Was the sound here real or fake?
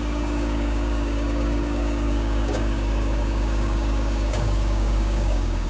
fake